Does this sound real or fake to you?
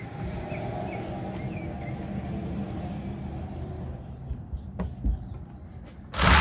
real